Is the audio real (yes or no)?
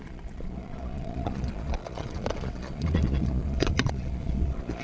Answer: no